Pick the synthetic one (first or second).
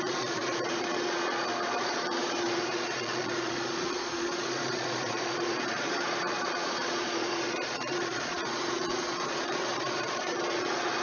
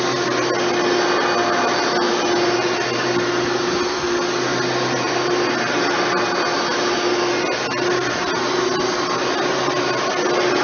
first